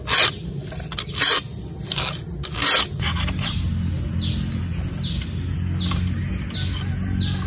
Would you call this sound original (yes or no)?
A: yes